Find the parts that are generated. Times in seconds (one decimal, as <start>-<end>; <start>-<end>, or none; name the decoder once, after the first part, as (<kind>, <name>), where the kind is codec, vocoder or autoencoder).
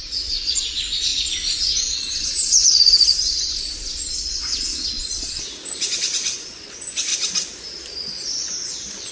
0.0-7.1 (vocoder, Vocos); 7.6-9.1